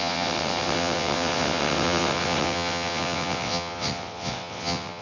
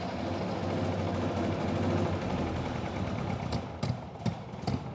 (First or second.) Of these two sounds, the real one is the second